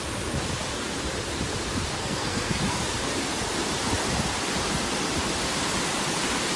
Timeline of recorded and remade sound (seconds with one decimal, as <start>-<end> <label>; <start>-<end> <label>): 0.0-2.0 recorded; 2.0-2.8 remade; 2.8-6.6 recorded